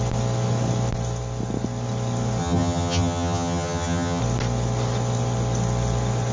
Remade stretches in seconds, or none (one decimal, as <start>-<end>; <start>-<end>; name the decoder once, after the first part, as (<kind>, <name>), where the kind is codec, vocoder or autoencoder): 2.4-4.2 (vocoder, HiFi-GAN)